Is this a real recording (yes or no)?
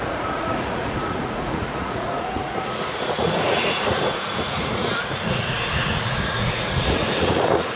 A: no